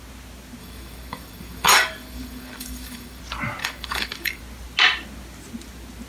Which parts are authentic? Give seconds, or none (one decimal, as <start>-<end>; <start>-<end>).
0.0-0.6; 3.2-3.6; 4.4-6.1